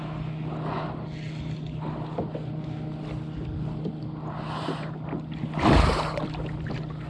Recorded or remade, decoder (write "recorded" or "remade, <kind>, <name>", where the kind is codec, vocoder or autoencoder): recorded